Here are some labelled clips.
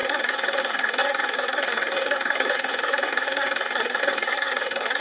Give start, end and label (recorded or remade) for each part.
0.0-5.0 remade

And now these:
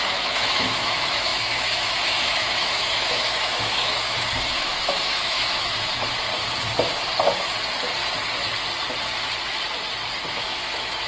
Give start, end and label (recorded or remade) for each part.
0.0-6.3 remade; 6.3-10.3 recorded; 10.3-11.1 remade